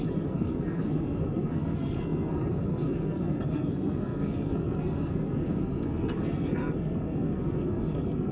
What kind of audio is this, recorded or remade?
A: remade